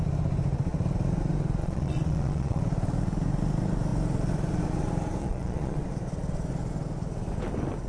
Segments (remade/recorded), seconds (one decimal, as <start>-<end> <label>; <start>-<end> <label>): 0.0-1.6 recorded; 1.6-2.6 remade; 2.6-5.2 recorded; 5.2-5.8 remade; 5.8-7.9 recorded